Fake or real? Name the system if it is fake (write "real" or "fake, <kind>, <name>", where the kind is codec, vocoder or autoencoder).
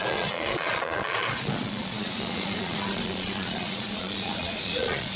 fake, vocoder, Vocos